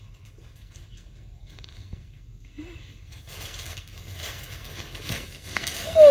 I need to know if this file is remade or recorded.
remade